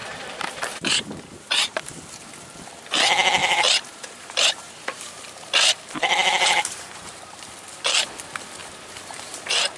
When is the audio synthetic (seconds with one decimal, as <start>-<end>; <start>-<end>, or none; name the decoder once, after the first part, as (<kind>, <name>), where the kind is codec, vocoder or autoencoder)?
0.0-1.8 (vocoder, BigVGAN v2); 3.4-7.4; 8.6-9.8